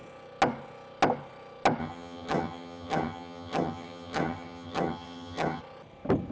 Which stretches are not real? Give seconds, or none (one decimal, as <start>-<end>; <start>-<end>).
1.8-5.6